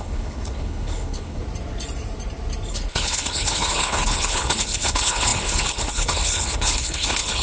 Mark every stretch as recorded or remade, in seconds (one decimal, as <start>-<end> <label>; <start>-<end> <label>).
0.0-1.4 remade; 1.4-2.7 recorded; 2.7-7.4 remade